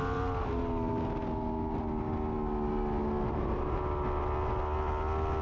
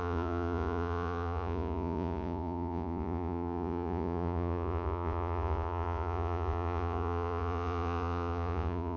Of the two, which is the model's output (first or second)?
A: second